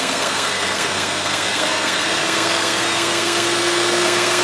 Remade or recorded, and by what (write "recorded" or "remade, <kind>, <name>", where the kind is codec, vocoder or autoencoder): remade, codec, SNAC